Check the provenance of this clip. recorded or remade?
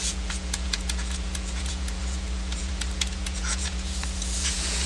remade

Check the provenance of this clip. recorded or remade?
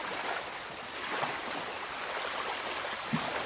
recorded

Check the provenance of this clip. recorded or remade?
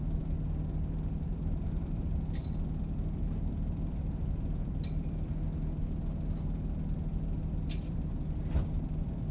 remade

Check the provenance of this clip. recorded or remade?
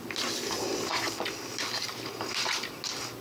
recorded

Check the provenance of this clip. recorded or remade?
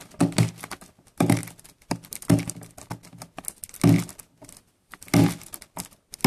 recorded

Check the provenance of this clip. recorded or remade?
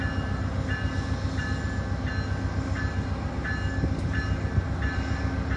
recorded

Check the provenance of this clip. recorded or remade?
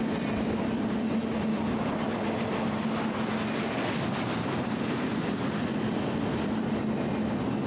recorded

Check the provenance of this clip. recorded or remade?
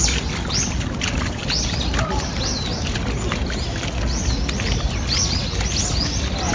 recorded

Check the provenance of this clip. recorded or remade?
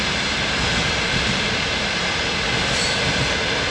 recorded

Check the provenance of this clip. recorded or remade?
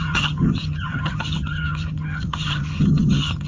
remade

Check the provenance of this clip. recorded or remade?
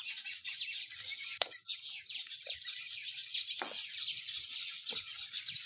recorded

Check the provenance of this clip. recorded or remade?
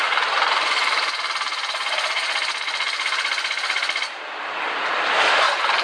remade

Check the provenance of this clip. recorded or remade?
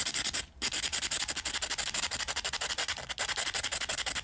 recorded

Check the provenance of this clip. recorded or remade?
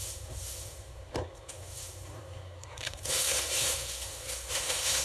remade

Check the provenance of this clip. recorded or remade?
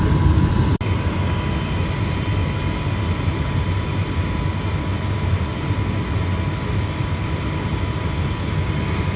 recorded